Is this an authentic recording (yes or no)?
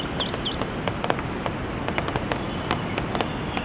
yes